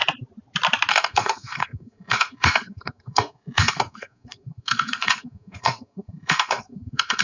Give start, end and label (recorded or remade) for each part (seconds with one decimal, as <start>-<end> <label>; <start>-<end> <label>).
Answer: 0.0-0.9 recorded; 0.9-7.2 remade